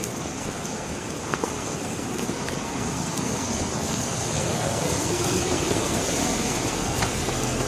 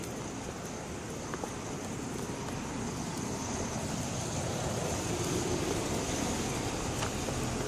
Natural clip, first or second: second